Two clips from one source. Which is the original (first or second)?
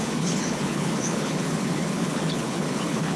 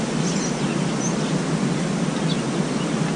second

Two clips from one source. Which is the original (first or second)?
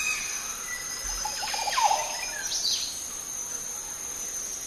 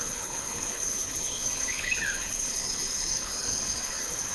first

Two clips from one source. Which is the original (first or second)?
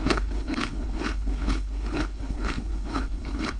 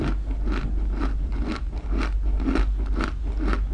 second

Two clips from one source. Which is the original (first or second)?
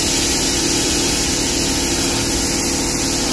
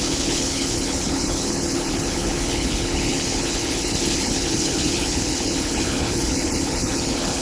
first